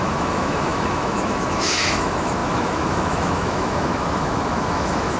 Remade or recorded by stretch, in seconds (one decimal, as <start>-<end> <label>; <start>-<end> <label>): 0.0-5.2 remade

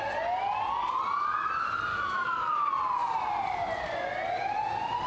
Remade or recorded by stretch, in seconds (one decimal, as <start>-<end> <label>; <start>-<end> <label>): 0.0-1.9 recorded; 1.9-2.7 remade; 2.7-5.1 recorded